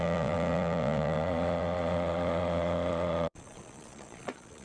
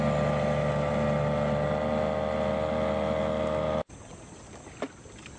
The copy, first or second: first